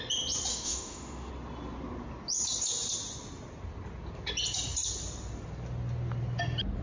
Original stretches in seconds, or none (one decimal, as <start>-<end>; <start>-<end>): 0.0-0.5; 1.3-6.8